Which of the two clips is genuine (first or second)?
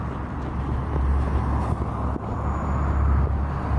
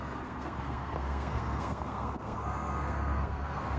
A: first